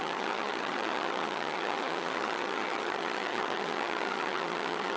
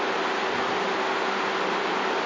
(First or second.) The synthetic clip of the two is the first